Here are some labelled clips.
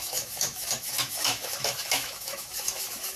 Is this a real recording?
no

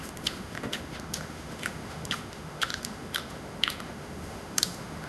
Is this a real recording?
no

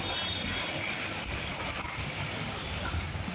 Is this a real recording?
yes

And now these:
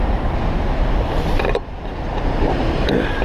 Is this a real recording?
yes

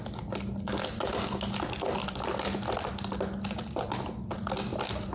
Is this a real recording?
yes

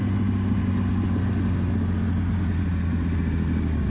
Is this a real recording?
yes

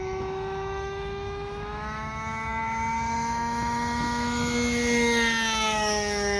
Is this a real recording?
no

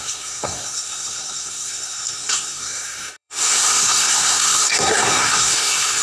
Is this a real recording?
no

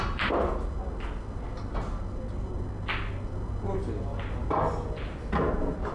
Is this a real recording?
yes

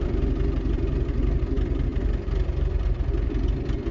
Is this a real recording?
yes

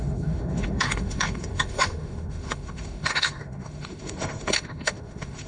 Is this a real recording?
no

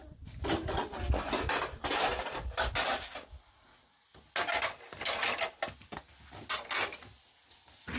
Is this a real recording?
yes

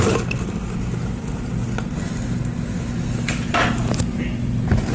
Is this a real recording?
yes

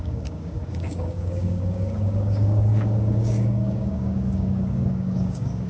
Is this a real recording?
no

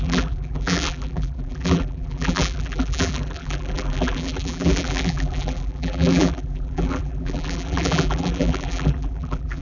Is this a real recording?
no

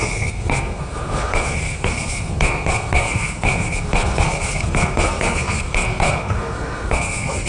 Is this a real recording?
no